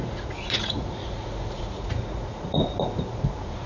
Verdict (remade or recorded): remade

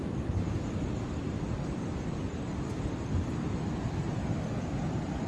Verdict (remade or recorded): recorded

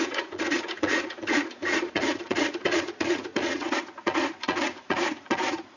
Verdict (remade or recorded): remade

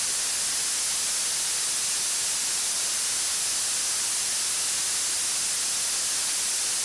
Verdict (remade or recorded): recorded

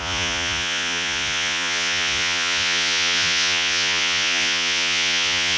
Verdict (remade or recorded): remade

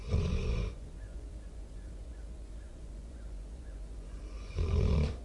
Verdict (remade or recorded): remade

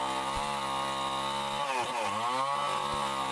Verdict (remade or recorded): recorded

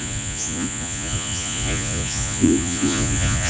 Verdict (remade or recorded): remade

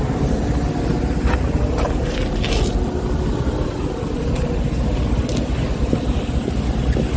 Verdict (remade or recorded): recorded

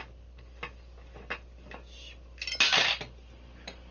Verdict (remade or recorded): recorded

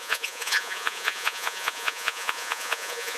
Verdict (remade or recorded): remade